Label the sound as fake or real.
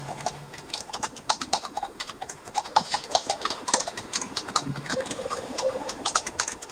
fake